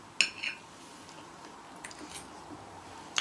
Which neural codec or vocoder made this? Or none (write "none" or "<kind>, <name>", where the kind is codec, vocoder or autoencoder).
none